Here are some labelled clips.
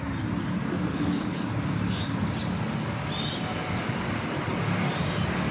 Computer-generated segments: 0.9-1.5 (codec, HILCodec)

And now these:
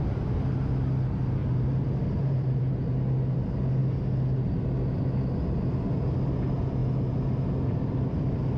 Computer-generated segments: 1.4-2.6 (vocoder, BigVGAN v2)

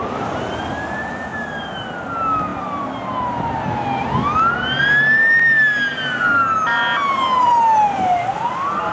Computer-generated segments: none

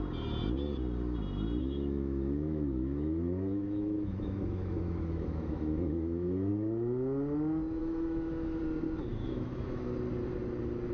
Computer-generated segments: 1.6-6.5 (autoencoder, DAC-VAE); 7.8-8.6; 9.1-9.8